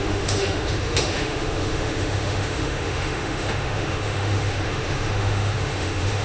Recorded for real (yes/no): no